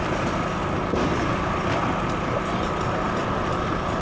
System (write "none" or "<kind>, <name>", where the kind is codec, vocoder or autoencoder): none